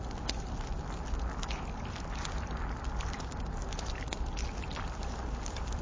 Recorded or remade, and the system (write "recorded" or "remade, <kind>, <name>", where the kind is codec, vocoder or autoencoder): recorded